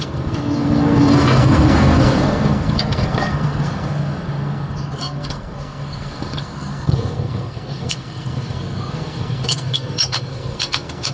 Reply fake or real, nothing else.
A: fake